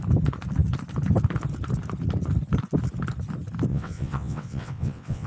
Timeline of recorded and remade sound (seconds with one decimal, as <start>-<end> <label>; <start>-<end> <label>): 0.0-3.7 recorded; 3.7-5.3 remade